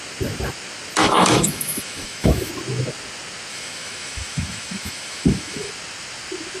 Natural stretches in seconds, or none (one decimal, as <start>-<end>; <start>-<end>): 0.0-1.0; 2.5-3.5; 5.7-6.6